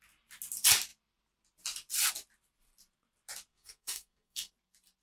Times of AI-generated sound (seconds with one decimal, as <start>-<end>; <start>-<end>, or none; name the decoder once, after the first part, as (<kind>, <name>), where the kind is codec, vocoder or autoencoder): 3.5-4.5 (codec, SNAC)